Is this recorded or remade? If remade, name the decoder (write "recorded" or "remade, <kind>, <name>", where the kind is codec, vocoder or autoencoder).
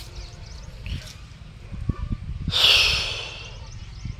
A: recorded